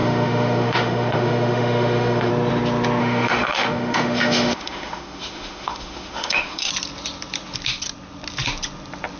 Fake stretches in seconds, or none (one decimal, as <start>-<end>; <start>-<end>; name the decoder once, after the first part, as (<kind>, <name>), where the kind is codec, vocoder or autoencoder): 0.0-2.3 (autoencoder, DAC-VAE); 3.0-6.7